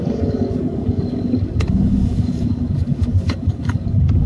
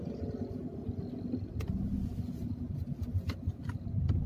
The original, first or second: second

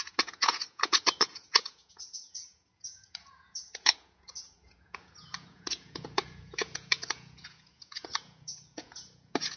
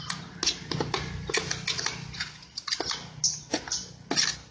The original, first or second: second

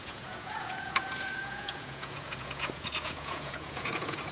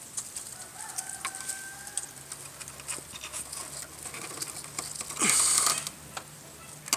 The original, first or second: second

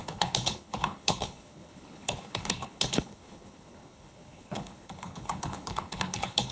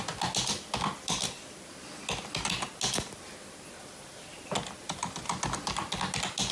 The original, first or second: second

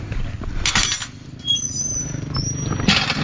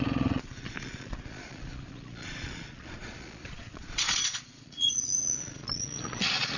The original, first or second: first